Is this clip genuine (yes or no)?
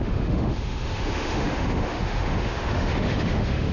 no